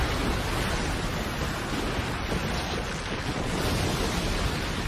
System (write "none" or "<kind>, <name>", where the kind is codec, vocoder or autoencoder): none